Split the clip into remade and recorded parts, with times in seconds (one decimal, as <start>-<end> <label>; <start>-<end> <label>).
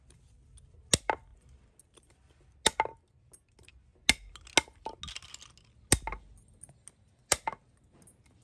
0.0-8.4 recorded